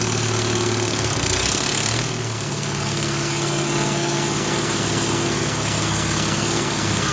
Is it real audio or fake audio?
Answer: fake